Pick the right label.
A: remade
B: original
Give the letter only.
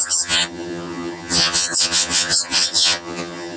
A